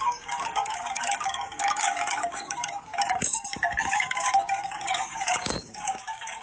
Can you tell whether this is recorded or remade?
remade